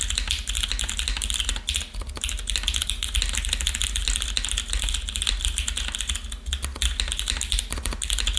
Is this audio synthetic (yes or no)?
no